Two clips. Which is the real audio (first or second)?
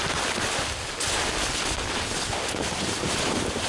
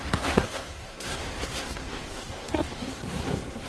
first